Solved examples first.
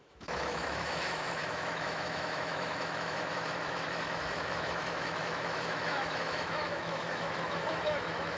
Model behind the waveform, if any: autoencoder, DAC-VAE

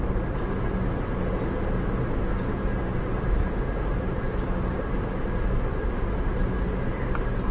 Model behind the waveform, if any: none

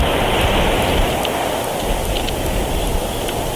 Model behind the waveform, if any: none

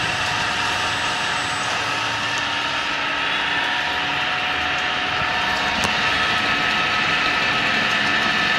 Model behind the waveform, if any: none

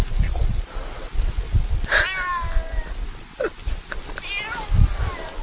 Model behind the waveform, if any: none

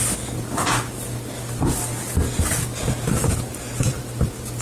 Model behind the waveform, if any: none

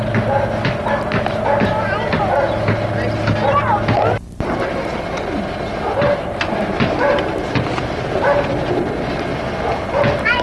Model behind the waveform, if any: none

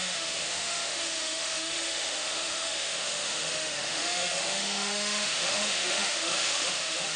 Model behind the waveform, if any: autoencoder, DAC-VAE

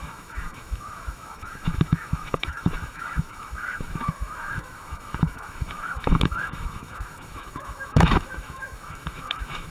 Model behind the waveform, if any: autoencoder, DAC-VAE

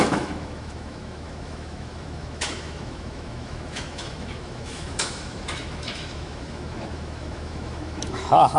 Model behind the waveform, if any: autoencoder, DAC-VAE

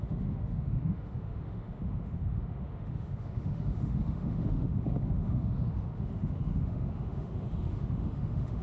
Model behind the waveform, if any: autoencoder, DAC-VAE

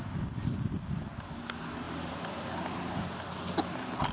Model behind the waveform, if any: none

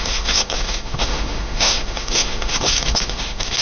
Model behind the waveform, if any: autoencoder, DAC-VAE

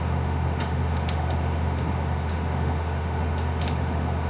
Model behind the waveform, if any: autoencoder, DAC-VAE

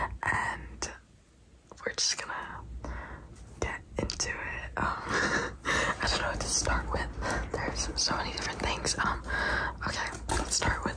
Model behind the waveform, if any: none